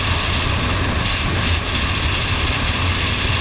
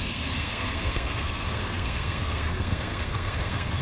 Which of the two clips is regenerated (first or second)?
second